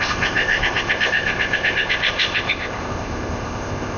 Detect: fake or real fake